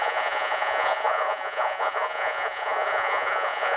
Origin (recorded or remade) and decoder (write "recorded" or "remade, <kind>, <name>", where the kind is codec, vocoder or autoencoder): remade, vocoder, Vocos